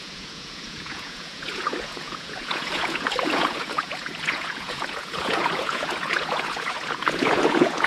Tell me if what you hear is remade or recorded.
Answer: remade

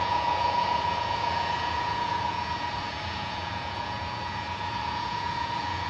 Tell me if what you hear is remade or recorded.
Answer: remade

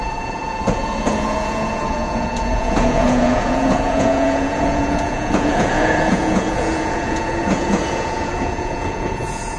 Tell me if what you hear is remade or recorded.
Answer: remade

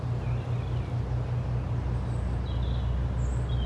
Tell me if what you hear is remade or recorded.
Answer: recorded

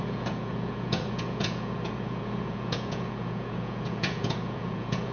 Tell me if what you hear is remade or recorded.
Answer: remade